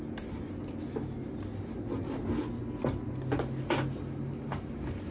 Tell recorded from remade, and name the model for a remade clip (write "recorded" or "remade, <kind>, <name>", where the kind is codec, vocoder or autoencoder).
recorded